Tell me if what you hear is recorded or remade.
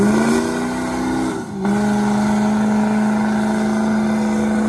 recorded